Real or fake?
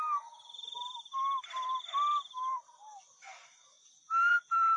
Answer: fake